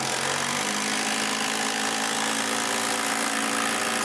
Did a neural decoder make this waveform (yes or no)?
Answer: no